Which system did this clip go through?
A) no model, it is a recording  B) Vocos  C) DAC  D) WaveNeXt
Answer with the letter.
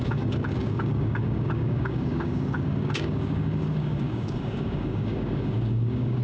C